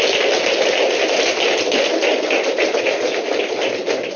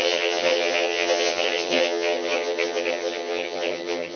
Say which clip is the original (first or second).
first